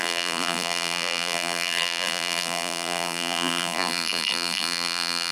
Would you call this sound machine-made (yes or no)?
yes